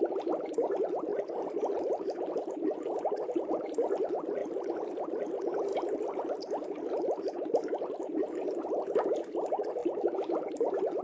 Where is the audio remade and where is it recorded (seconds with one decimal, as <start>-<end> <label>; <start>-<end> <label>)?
0.0-1.1 recorded; 1.1-1.7 remade; 1.7-4.4 recorded; 4.4-5.3 remade; 5.3-5.7 recorded; 5.7-6.3 remade; 6.3-9.8 recorded; 9.8-11.0 remade